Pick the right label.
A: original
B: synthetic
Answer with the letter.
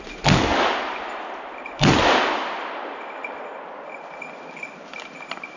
A